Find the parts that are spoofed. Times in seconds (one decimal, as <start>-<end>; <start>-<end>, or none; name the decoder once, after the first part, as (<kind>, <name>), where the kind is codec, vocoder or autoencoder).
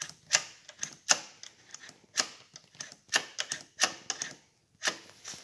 none